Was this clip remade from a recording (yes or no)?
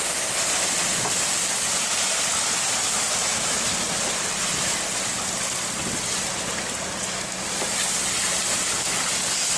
no